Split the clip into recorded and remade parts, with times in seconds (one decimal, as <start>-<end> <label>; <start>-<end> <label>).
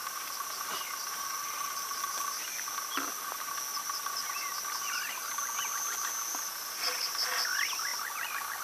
0.0-2.4 remade; 2.4-3.7 recorded; 3.7-4.4 remade; 4.4-8.6 recorded